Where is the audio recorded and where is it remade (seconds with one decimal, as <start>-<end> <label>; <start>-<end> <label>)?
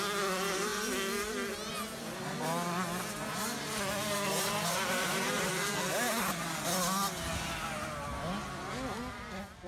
0.0-4.0 recorded; 4.0-5.5 remade; 5.5-9.7 recorded